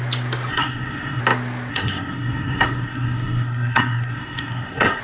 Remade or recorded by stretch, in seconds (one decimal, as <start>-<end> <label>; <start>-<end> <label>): 0.0-0.5 recorded; 0.5-1.2 remade; 1.2-1.7 recorded; 1.7-5.0 remade